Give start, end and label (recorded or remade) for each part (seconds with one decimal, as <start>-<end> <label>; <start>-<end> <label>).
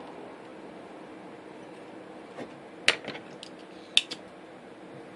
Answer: 0.0-5.2 recorded